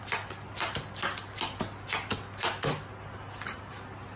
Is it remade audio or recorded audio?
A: recorded